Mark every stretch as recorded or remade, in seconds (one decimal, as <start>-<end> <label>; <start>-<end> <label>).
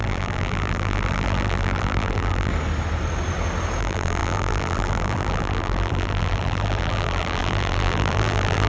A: 0.0-2.5 remade; 2.5-3.8 recorded; 3.8-8.7 remade